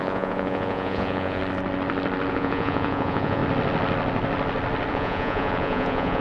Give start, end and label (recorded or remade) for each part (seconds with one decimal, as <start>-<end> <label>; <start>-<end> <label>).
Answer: 0.0-1.4 remade; 1.4-2.3 recorded; 2.3-3.4 remade; 3.4-4.9 recorded; 4.9-6.2 remade